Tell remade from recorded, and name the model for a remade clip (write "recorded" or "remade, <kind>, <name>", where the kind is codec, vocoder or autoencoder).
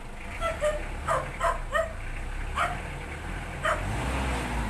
recorded